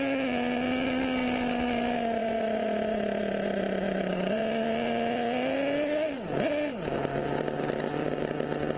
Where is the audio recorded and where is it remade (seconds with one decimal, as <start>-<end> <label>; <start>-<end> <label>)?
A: 0.0-2.2 recorded; 2.2-4.4 remade; 4.4-8.8 recorded